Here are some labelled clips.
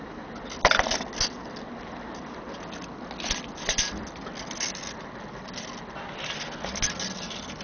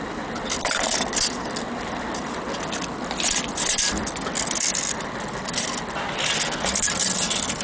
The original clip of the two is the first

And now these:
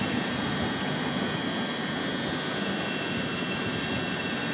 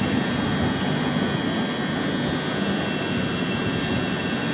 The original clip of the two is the second